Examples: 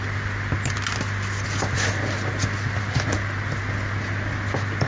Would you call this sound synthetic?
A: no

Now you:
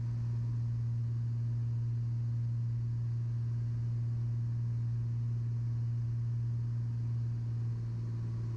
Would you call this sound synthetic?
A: no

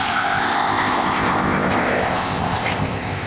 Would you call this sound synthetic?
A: yes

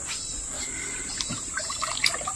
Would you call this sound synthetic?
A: no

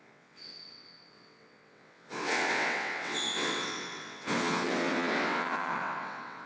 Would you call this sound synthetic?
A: yes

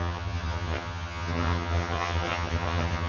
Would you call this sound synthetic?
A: yes